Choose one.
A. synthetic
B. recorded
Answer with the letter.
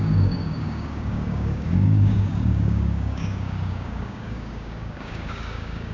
A